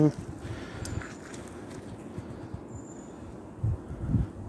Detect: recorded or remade recorded